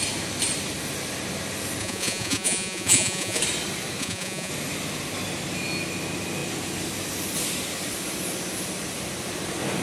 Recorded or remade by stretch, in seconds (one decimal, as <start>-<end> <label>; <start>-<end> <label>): 0.0-1.8 recorded; 1.8-3.4 remade; 3.4-4.0 recorded; 4.0-4.5 remade; 4.5-9.8 recorded